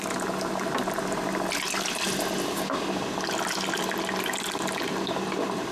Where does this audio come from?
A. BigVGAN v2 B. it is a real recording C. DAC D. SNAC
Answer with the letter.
B